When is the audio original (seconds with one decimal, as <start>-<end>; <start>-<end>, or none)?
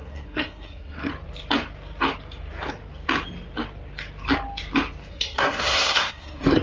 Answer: 1.1-5.1